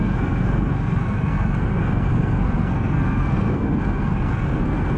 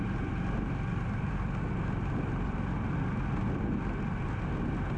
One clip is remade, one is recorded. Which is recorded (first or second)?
second